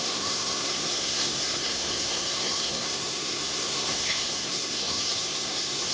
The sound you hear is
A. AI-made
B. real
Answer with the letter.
A